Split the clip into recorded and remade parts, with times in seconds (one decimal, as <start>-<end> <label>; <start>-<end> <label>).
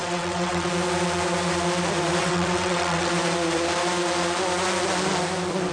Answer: 0.0-0.7 remade; 0.7-2.2 recorded; 2.2-3.1 remade; 3.1-5.7 recorded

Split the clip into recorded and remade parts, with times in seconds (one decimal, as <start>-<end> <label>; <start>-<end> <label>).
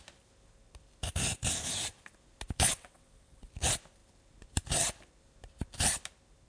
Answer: 0.0-2.7 recorded; 2.7-3.5 remade; 3.5-6.5 recorded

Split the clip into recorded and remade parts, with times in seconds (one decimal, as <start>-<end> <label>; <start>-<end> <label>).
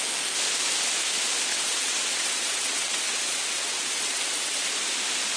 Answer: 0.0-1.5 recorded; 1.5-4.7 remade; 4.7-5.4 recorded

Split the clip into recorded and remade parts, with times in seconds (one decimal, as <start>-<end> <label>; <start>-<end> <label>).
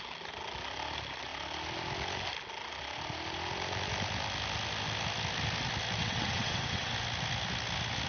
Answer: 0.0-6.0 recorded; 6.0-6.9 remade; 6.9-8.1 recorded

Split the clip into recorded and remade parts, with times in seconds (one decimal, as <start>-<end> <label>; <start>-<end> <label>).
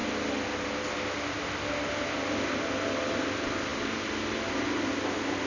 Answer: 0.0-5.5 recorded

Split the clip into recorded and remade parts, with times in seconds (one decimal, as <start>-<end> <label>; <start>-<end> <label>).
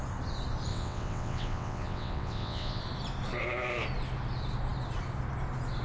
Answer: 0.0-0.7 recorded; 0.7-2.8 remade; 2.8-5.8 recorded